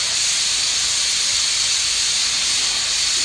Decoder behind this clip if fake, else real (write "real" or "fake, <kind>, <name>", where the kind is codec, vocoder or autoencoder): real